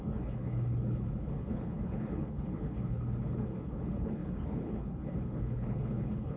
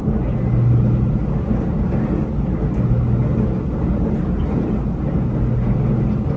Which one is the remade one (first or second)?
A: first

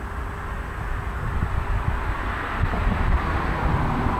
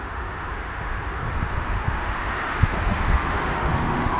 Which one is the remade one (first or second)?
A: second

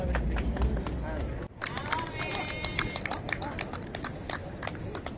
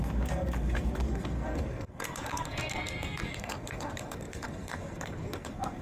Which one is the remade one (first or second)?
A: second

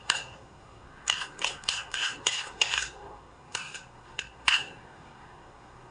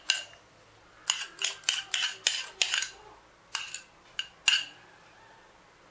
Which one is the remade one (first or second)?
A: first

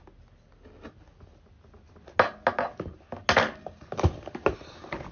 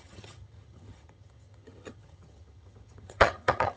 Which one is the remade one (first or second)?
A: second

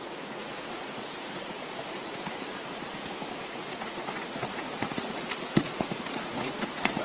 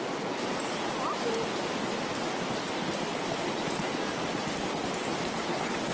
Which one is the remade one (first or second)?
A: first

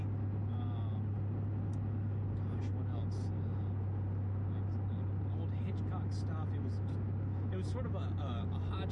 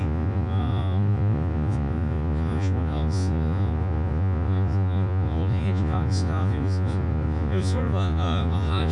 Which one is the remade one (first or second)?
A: second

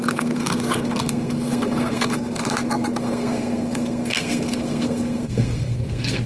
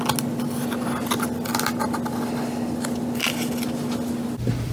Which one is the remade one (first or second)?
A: first